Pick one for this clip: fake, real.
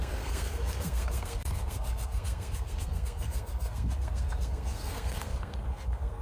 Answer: fake